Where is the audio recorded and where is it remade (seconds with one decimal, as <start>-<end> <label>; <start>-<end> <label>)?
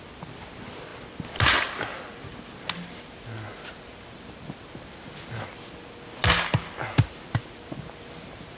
0.0-8.6 recorded